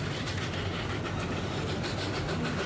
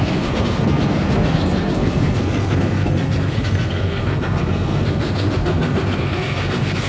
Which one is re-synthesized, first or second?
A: second